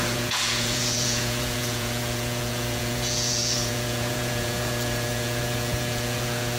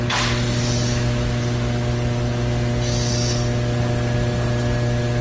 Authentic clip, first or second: second